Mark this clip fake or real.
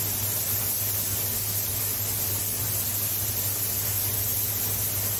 real